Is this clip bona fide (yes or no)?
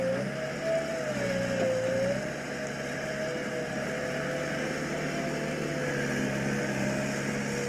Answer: yes